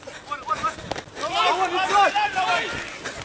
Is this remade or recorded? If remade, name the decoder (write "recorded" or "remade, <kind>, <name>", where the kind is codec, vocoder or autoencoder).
recorded